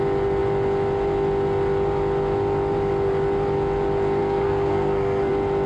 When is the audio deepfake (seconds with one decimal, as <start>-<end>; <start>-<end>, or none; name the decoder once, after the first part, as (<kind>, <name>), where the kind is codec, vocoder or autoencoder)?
4.2-5.3 (codec, SNAC)